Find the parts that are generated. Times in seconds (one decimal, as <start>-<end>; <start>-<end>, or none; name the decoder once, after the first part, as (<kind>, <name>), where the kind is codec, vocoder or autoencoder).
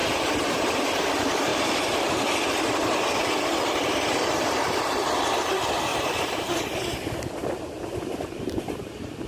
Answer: 0.0-1.1 (vocoder, BigVGAN v2); 1.5-2.2; 5.9-6.7